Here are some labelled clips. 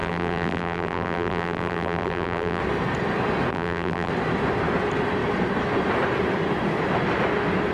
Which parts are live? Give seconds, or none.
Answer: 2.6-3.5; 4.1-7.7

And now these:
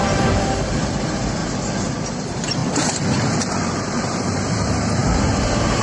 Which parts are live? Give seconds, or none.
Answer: 1.4-2.0; 2.6-3.5

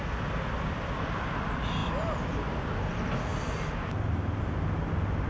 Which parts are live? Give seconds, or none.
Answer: 0.0-5.3

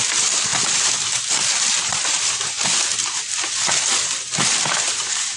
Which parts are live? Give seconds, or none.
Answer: 0.0-5.4

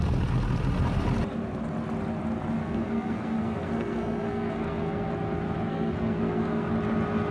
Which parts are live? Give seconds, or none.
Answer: 0.0-2.6; 5.1-5.7; 6.7-7.3

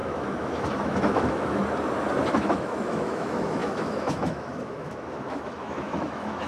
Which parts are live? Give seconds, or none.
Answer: 1.6-2.3